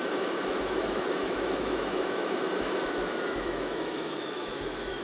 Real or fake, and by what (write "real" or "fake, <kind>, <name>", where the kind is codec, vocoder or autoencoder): fake, autoencoder, DAC-VAE